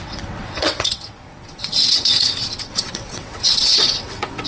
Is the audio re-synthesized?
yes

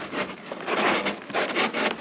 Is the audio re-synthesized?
no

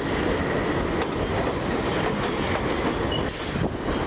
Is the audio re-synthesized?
yes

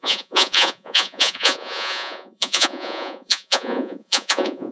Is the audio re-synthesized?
yes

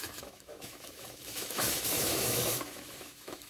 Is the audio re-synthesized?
yes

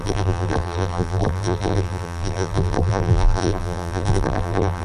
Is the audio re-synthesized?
yes